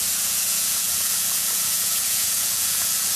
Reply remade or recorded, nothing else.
remade